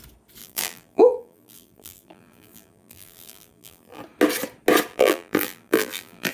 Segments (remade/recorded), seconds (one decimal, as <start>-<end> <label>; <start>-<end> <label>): 0.0-0.4 recorded; 0.4-4.0 remade; 4.0-4.9 recorded; 4.9-6.3 remade